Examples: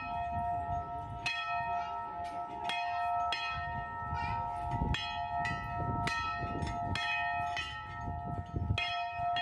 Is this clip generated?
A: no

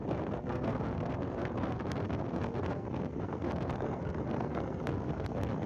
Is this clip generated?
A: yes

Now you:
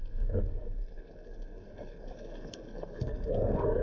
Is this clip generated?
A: yes